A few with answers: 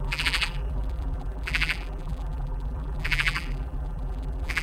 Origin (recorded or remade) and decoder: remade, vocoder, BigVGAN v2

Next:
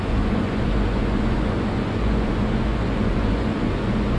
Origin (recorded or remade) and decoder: remade, vocoder, Vocos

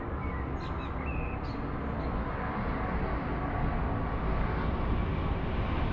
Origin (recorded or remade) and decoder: recorded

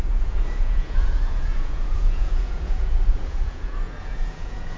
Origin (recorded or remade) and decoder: remade, vocoder, Vocos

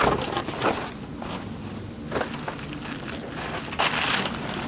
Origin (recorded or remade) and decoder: recorded